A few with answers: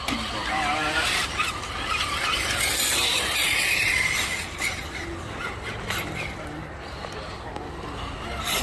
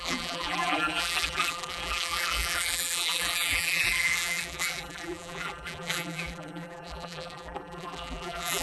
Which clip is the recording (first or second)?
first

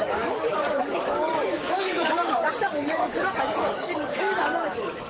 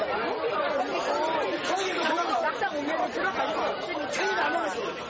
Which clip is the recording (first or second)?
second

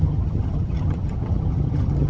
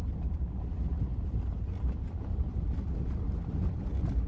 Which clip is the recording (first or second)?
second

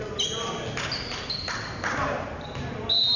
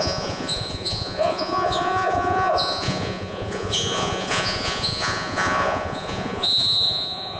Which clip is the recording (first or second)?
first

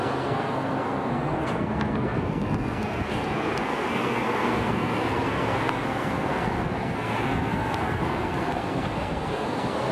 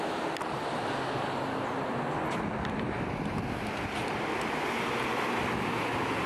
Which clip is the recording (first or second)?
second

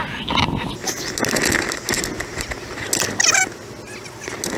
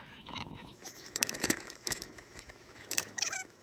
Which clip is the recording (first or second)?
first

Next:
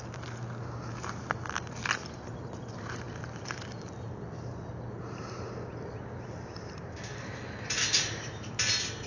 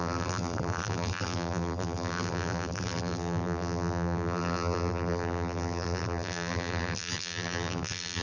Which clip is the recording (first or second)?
first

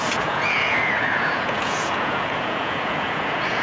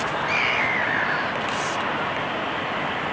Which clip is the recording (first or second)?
second